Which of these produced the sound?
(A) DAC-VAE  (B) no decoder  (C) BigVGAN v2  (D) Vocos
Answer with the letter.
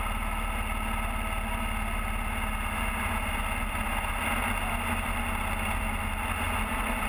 B